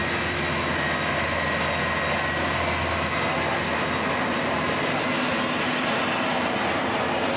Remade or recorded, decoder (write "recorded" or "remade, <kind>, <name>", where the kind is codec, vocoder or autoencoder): recorded